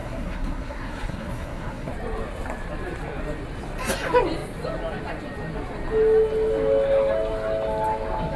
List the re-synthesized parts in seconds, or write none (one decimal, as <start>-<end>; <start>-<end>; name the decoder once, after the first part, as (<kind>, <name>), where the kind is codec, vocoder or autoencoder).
0.0-1.9 (codec, SNAC)